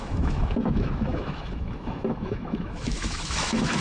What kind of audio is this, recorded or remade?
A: remade